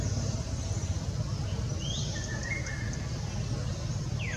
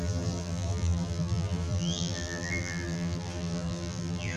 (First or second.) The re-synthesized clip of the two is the second